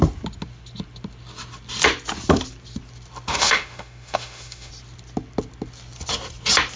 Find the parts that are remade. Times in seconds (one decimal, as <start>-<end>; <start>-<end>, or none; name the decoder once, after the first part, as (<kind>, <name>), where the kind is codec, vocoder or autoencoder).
3.3-4.7 (autoencoder, DAC-VAE)

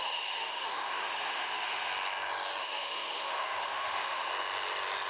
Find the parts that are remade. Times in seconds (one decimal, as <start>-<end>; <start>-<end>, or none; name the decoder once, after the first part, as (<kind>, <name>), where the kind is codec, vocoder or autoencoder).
0.0-1.9 (autoencoder, DAC-VAE); 2.6-4.3